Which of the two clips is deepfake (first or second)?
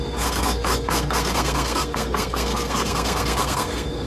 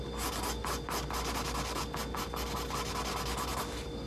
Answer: first